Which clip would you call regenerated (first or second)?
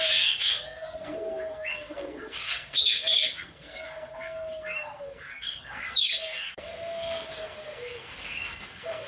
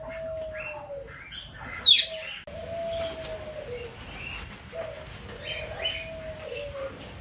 first